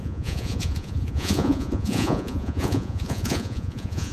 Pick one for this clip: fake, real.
fake